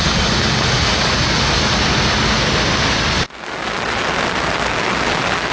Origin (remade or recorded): recorded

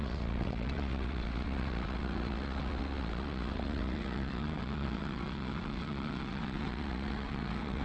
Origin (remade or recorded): remade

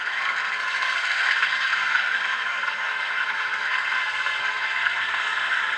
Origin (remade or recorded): remade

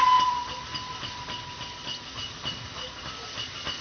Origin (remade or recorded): recorded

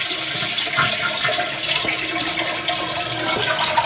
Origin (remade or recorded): recorded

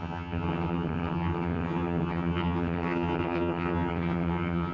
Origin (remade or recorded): remade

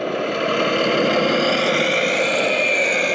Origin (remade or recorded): recorded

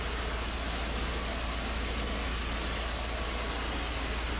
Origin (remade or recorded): recorded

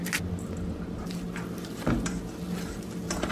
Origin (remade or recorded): recorded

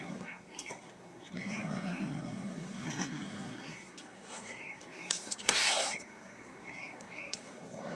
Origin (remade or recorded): remade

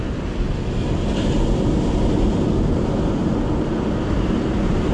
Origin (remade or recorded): recorded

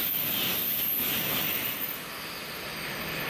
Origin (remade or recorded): recorded